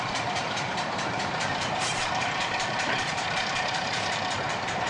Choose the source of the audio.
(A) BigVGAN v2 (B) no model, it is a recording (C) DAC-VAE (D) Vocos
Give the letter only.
A